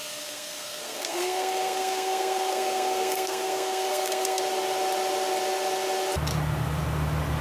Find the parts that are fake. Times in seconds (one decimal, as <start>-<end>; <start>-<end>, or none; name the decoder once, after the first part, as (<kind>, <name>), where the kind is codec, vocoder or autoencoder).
0.0-4.4 (codec, SNAC)